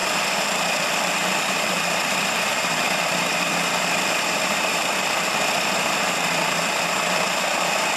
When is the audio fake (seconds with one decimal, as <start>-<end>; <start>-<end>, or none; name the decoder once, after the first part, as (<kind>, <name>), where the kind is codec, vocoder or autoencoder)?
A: 0.0-8.0 (vocoder, BigVGAN v2)